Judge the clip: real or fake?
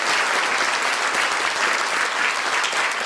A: real